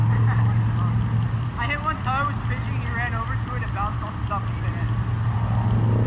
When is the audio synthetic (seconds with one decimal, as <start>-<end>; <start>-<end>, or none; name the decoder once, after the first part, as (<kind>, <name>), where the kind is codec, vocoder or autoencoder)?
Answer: none